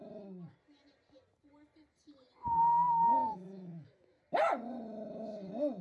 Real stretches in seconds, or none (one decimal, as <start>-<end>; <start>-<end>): 0.0-3.2; 4.2-5.8

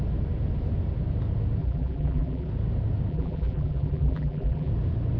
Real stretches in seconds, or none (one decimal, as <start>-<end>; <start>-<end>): 0.0-1.6; 2.5-3.1; 4.7-5.2

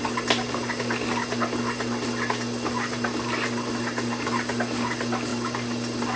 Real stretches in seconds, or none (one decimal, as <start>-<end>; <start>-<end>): 0.0-6.2

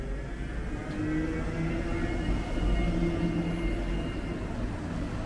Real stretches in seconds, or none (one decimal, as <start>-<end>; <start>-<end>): 0.0-5.3

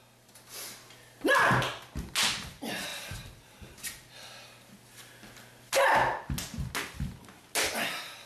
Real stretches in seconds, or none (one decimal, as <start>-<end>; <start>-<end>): 0.0-8.3

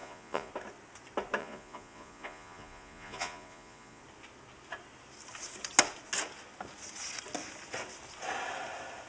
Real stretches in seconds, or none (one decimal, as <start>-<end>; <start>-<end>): 0.5-1.4; 4.0-9.1

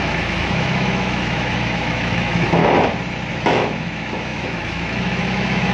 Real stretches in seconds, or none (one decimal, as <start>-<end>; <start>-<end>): 2.6-3.3

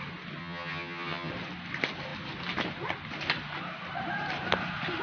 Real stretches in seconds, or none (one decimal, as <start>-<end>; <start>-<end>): 0.0-0.4; 1.3-5.0